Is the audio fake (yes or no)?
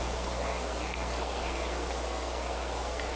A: yes